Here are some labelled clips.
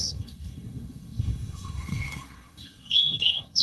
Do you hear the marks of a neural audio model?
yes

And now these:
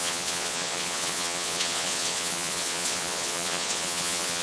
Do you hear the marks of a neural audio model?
yes